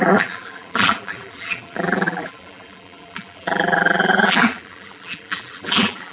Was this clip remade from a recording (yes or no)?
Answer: yes